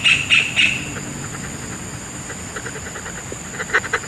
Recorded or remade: recorded